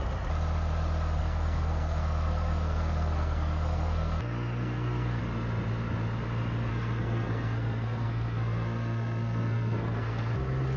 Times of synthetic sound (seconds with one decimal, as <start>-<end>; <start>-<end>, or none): 1.2-5.2; 6.7-10.3